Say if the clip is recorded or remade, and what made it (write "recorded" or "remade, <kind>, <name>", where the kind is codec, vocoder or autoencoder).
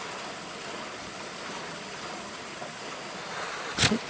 recorded